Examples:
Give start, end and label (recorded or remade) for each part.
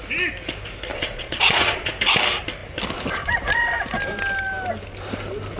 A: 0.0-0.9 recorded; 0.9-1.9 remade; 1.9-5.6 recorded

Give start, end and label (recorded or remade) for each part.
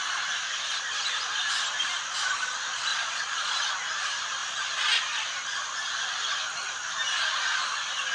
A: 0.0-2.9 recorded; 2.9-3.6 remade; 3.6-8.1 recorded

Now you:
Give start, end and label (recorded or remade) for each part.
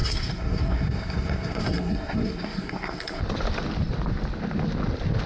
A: 0.0-3.2 remade; 3.2-5.3 recorded